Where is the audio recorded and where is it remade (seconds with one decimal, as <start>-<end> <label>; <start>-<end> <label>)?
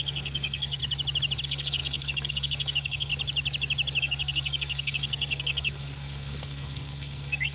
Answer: 0.0-0.8 remade; 0.8-1.4 recorded; 1.4-3.1 remade; 3.1-4.0 recorded; 4.0-7.5 remade